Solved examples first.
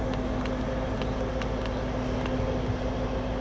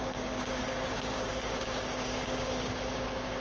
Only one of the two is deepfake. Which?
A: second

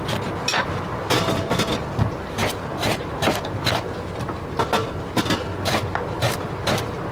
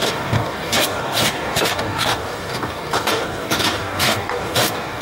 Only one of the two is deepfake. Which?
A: second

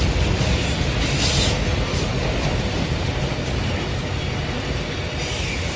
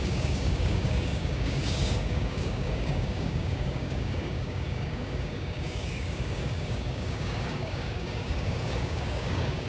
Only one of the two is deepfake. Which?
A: second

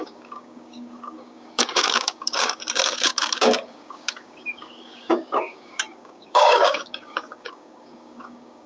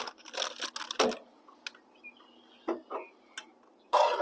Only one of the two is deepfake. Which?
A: first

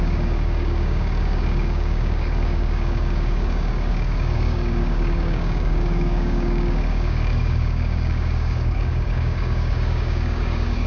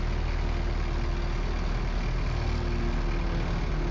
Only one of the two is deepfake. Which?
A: first